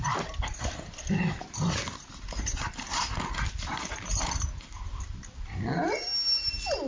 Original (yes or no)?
yes